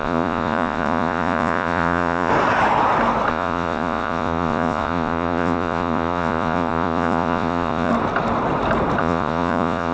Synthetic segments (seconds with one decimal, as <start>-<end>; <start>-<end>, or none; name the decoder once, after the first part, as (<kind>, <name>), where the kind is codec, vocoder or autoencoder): 0.0-2.3 (vocoder, Vocos); 3.3-7.9; 9.0-9.9

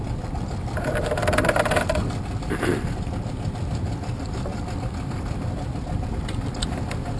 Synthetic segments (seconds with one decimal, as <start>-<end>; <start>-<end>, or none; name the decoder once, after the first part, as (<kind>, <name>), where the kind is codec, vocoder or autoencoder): none